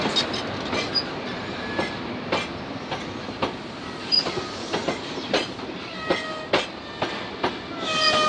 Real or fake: real